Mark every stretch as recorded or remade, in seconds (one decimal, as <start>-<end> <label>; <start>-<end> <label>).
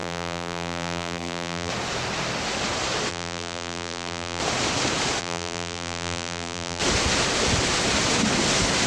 0.0-1.7 remade; 1.7-3.1 recorded; 3.1-4.4 remade; 4.4-5.2 recorded; 5.2-6.8 remade; 6.8-8.9 recorded